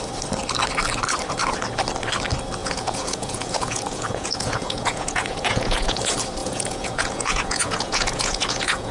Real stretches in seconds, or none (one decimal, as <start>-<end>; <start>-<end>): 0.0-2.6; 6.0-6.4